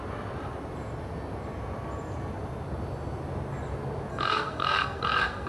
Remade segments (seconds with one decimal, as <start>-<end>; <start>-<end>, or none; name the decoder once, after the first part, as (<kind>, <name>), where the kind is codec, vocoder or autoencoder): 4.1-5.5 (codec, SNAC)